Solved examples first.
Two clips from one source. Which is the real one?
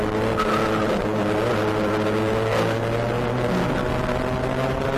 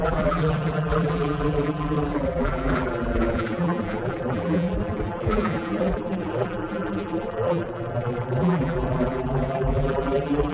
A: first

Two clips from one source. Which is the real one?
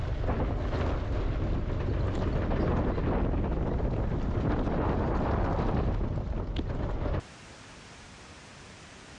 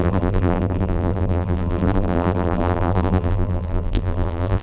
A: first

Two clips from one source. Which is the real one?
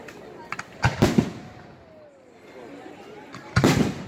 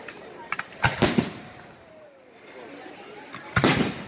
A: first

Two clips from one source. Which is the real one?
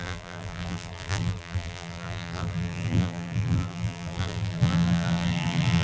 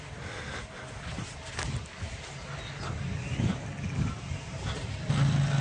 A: second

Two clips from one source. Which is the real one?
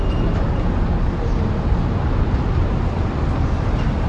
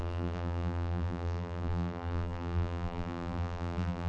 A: first